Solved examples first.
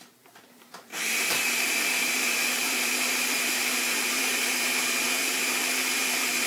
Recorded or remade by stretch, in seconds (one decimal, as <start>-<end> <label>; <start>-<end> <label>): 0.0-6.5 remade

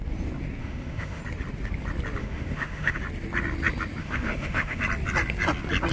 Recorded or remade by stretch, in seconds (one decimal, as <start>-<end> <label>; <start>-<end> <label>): 0.0-0.6 recorded; 0.6-1.2 remade; 1.2-2.2 recorded; 2.2-3.0 remade; 3.0-4.0 recorded; 4.0-4.8 remade; 4.8-5.9 recorded

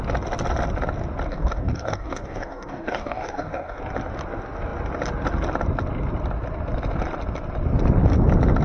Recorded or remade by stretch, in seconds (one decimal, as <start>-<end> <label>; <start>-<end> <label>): 0.0-1.3 recorded; 1.3-3.8 remade; 3.8-8.6 recorded